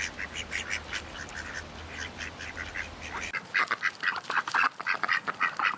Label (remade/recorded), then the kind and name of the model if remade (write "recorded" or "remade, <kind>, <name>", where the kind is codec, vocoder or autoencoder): recorded